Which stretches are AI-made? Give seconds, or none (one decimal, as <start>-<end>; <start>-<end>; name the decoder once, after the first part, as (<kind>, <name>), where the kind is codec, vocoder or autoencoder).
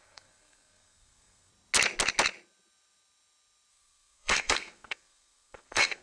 0.0-1.5 (codec, SNAC); 3.7-6.0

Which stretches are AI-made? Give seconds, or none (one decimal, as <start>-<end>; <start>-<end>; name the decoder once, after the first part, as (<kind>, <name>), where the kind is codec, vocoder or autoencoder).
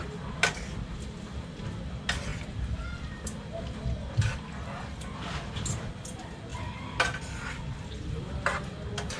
none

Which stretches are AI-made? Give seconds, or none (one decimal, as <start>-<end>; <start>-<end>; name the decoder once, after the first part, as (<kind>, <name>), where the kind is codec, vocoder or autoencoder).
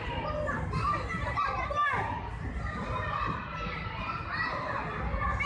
none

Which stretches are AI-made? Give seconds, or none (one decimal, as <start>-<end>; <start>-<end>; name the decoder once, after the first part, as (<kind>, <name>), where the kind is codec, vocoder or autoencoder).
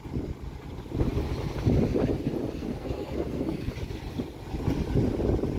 2.6-3.7 (codec, SNAC)